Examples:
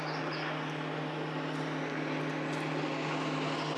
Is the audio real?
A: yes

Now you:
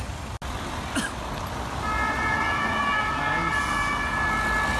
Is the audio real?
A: yes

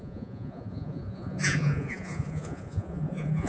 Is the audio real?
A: no